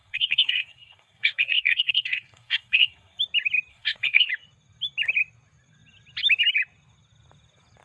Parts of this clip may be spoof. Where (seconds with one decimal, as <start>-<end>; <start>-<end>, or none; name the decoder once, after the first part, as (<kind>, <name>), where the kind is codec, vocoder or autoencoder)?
0.0-3.2 (codec, SNAC); 3.7-4.3